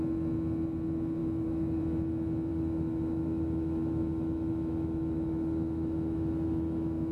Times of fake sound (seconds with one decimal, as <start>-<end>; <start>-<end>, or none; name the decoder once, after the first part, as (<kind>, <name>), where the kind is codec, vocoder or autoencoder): 1.2-1.8 (autoencoder, DAC-VAE); 2.5-7.1